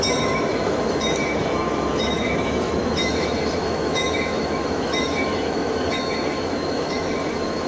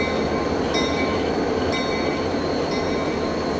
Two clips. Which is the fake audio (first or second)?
first